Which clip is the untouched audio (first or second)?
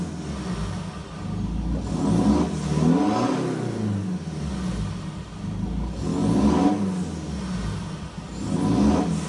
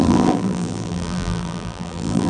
first